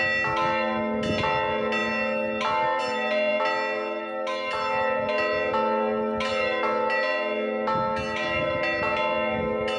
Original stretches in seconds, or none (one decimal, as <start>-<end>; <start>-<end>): 0.0-9.8